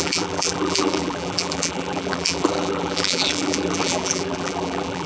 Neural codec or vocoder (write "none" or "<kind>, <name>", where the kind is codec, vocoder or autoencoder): vocoder, BigVGAN v2